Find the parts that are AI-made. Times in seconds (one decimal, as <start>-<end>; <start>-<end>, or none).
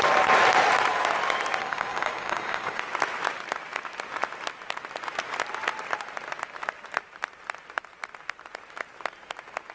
1.6-2.8